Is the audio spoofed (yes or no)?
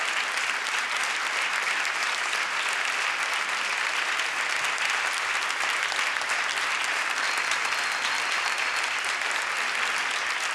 no